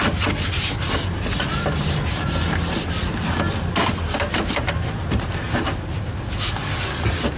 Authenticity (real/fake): real